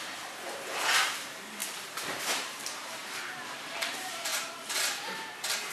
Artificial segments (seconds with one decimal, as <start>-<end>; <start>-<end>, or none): 0.0-1.6; 2.2-5.7